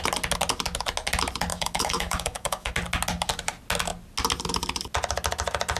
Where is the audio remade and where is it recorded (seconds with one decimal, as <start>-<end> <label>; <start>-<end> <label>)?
0.0-1.5 recorded; 1.5-2.7 remade; 2.7-5.8 recorded